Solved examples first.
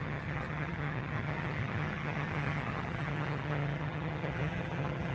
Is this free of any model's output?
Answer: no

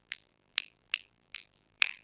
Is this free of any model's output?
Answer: no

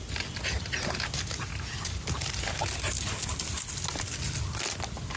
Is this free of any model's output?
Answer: yes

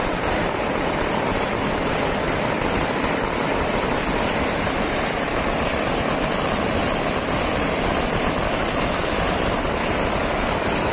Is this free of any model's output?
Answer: yes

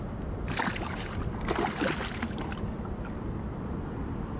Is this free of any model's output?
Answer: yes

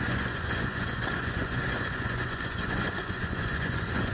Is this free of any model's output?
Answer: no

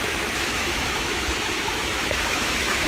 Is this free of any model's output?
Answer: no